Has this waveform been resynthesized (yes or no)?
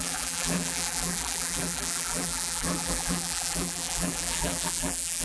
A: yes